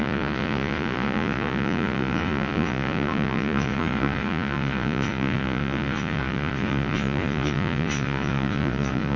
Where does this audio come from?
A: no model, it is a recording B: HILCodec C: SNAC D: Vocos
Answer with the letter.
D